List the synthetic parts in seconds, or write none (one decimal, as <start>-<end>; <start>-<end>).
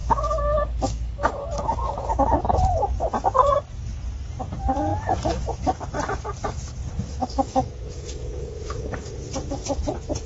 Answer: 0.0-2.1; 7.2-9.1